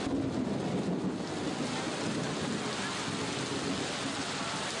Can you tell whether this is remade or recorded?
recorded